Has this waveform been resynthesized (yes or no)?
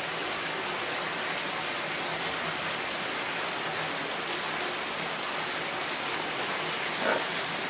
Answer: no